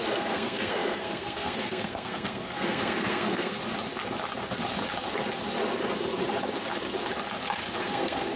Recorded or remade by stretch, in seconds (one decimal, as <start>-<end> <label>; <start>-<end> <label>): 0.0-3.6 remade; 3.6-7.8 recorded; 7.8-8.4 remade